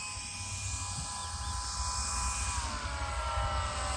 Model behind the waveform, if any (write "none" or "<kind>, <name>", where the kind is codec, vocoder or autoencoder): none